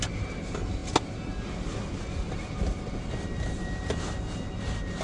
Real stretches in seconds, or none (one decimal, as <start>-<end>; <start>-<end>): 0.0-5.0